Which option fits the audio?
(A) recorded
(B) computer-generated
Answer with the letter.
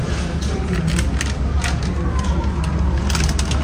A